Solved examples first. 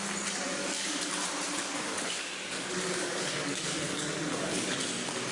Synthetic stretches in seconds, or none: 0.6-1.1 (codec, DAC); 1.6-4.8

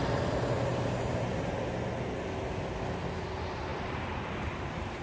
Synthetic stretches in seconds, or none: 0.7-1.7 (vocoder, BigVGAN v2); 3.7-4.5

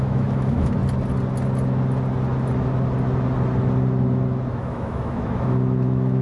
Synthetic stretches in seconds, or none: 0.0-0.8 (autoencoder, DAC-VAE); 4.5-6.2

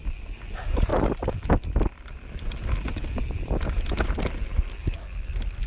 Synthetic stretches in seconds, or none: none

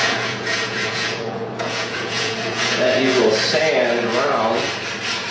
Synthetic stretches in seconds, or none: 0.0-3.2 (vocoder, Vocos)

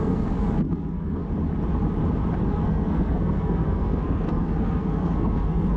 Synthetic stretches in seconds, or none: 0.0-1.2 (codec, SNAC); 2.5-5.8